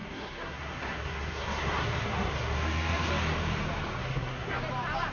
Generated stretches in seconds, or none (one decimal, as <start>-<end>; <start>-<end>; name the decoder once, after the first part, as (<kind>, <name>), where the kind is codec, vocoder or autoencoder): 0.0-3.1 (codec, SNAC); 4.0-4.6